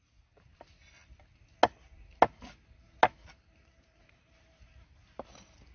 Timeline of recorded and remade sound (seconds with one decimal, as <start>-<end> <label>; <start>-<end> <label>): 0.0-5.7 recorded